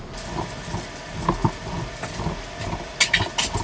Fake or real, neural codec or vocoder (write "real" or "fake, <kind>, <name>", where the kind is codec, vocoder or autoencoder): real